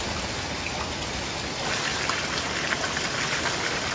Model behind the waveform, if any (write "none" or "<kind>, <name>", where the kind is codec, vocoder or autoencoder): none